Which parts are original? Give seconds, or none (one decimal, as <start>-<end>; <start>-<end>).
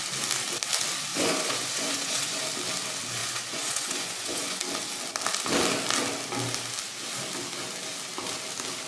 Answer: 0.0-1.1; 2.4-3.2; 4.6-8.9